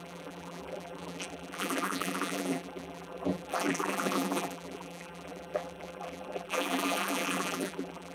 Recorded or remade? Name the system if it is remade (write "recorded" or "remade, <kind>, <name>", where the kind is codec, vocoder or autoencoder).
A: remade, vocoder, BigVGAN v2